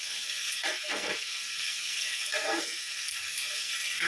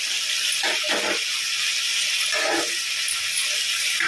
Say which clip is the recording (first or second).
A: second